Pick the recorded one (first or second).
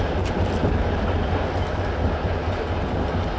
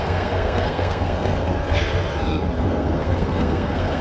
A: first